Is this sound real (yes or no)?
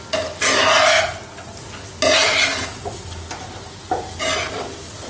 yes